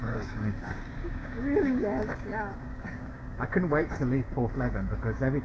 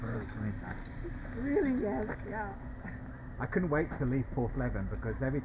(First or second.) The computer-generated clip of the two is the first